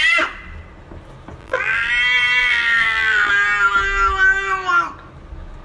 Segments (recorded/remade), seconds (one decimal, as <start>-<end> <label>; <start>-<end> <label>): 0.0-1.4 recorded; 1.4-1.9 remade; 1.9-2.4 recorded; 2.4-3.3 remade; 3.3-5.6 recorded